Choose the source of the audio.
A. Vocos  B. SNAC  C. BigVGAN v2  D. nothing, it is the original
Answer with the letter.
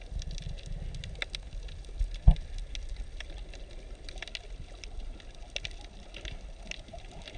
D